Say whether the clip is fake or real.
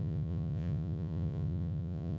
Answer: fake